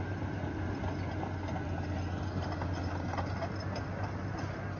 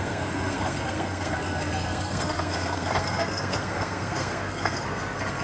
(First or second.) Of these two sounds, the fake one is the second